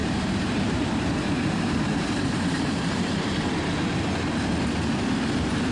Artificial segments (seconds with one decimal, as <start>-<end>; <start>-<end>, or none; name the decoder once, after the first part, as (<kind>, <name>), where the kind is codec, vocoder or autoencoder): 0.0-3.4 (vocoder, BigVGAN v2)